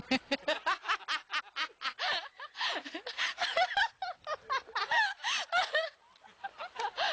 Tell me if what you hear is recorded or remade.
recorded